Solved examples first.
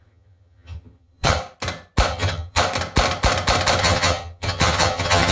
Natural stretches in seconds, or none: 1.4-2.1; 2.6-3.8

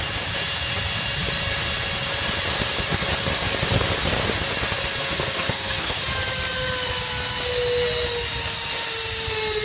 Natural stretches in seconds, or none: 0.0-5.0; 6.0-9.6

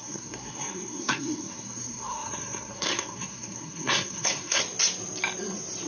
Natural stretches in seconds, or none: 4.6-5.9

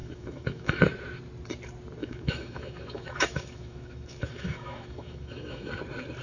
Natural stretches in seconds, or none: 0.8-2.0; 5.7-6.2

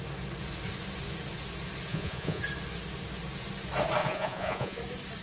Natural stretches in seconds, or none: 0.0-1.9; 2.4-4.0; 4.8-5.2

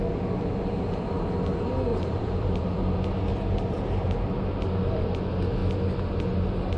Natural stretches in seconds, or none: 0.0-1.9; 2.8-3.3; 4.5-6.8

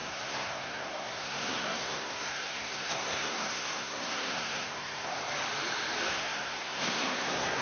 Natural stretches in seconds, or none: 5.1-6.1